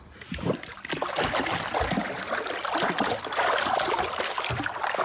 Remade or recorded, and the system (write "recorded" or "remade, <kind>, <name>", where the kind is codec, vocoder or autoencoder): recorded